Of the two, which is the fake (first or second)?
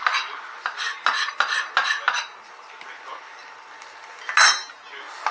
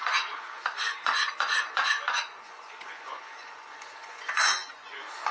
second